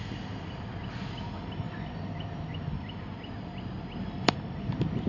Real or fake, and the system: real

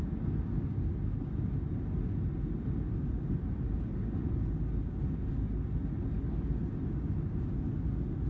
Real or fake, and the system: real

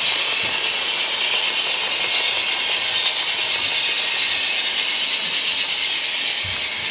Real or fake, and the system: real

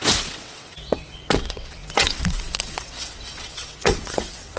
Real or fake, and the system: fake, vocoder, WaveNeXt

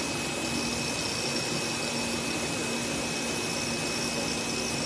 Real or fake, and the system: real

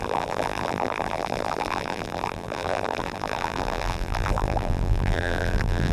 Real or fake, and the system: fake, vocoder, BigVGAN v2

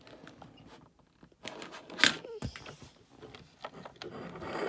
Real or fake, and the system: real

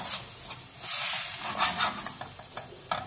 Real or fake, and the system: real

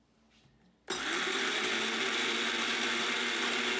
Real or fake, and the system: real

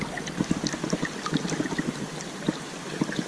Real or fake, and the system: real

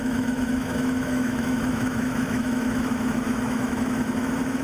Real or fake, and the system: fake, autoencoder, DAC-VAE